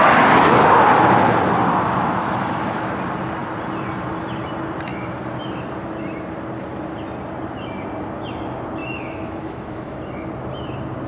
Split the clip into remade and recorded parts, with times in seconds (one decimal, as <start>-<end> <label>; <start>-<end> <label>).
0.0-2.2 recorded; 2.2-2.9 remade; 2.9-8.8 recorded; 8.8-10.0 remade; 10.0-11.1 recorded